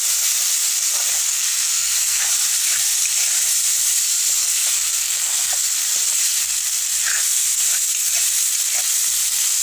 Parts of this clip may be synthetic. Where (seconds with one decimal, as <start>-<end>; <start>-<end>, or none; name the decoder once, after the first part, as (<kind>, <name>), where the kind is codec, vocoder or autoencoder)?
1.3-2.2 (codec, SNAC); 4.4-5.7; 7.1-7.6